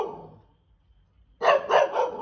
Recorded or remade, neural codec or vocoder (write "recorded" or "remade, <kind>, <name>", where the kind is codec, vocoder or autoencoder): recorded